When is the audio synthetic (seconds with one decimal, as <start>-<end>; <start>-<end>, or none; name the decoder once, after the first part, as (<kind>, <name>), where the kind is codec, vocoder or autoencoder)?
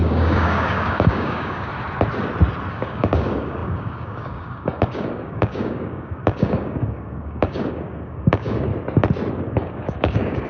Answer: 0.0-1.7 (codec, DAC); 2.7-8.7; 9.3-10.5